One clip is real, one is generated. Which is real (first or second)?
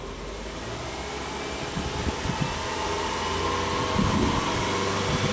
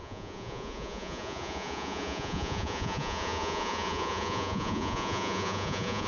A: first